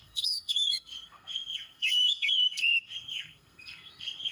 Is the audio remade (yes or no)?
yes